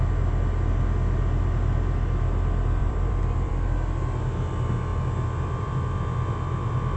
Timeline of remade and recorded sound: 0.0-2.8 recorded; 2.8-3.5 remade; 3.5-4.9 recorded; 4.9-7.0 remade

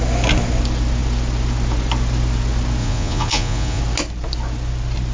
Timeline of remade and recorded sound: 0.0-2.8 recorded; 2.8-3.8 remade; 3.8-5.1 recorded